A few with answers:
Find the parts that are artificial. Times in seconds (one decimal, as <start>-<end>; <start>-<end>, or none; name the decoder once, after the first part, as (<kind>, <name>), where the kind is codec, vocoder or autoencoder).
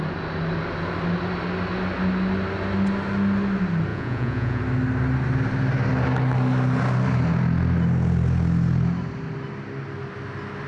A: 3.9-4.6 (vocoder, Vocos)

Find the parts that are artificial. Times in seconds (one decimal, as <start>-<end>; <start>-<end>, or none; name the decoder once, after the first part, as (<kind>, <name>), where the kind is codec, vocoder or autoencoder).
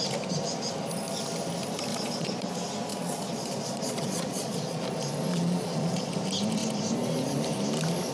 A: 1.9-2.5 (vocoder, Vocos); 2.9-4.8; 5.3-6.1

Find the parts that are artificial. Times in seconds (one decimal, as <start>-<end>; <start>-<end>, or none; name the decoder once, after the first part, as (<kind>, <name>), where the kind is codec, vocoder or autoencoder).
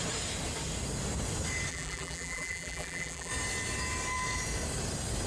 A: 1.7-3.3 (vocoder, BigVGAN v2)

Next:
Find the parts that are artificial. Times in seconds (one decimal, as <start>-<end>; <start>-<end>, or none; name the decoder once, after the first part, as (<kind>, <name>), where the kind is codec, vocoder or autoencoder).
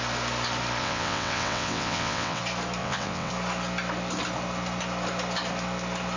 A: 0.8-2.4 (vocoder, WaveNeXt); 2.8-3.3